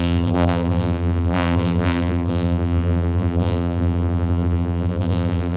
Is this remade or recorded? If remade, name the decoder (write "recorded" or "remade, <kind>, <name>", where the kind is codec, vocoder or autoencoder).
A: remade, vocoder, BigVGAN v2